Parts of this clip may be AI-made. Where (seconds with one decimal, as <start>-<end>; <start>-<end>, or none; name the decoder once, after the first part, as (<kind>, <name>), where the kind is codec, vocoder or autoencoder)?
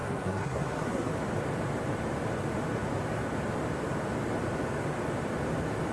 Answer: 0.0-1.1 (codec, SNAC)